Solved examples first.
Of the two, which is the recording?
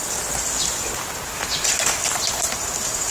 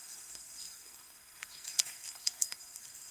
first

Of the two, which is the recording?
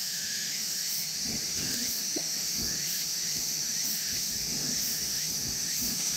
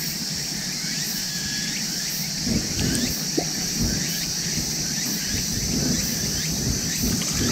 second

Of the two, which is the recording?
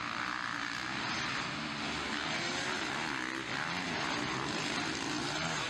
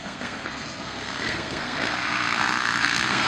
first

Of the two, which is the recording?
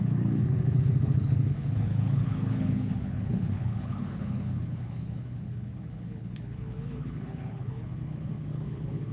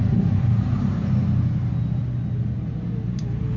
second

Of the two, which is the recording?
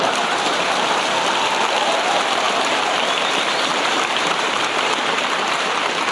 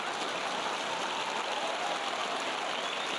second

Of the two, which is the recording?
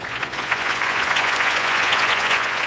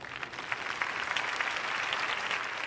second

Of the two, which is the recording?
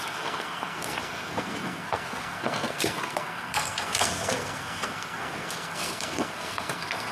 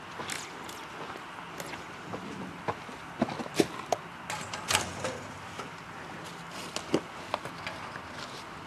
second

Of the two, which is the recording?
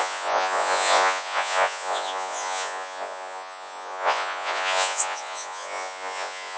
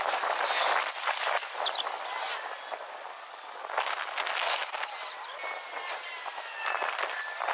second